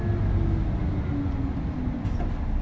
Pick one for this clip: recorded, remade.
recorded